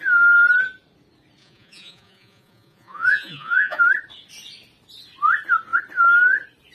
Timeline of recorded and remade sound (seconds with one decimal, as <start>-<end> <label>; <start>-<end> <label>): 0.0-1.4 recorded; 1.4-3.8 remade; 3.8-6.7 recorded